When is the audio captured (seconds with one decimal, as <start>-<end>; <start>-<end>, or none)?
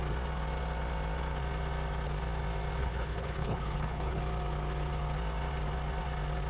0.0-2.8; 4.2-6.5